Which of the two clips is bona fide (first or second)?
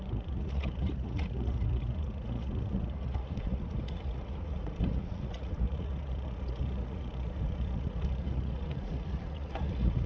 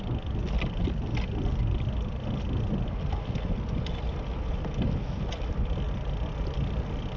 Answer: second